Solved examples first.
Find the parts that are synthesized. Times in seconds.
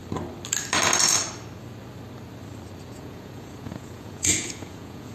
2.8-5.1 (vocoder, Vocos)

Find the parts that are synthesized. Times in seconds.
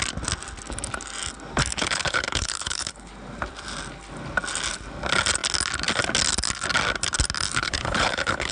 1.7-3.1 (codec, HILCodec); 7.6-8.5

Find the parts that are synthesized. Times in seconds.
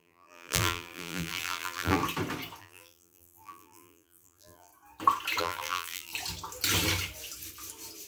0.0-2.0 (vocoder, BigVGAN v2); 2.6-4.7; 5.4-6.1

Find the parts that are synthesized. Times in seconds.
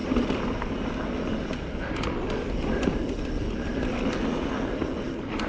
none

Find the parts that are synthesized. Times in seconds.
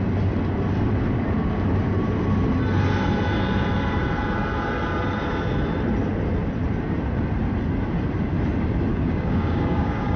8.9-10.2 (codec, DAC)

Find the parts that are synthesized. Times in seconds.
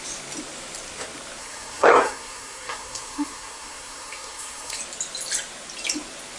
1.4-4.8 (codec, SNAC)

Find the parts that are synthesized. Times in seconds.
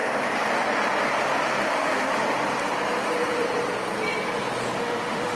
1.7-2.1 (autoencoder, DAC-VAE); 4.8-5.4